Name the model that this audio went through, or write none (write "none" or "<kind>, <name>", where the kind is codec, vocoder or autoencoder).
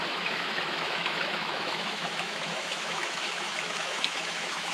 autoencoder, DAC-VAE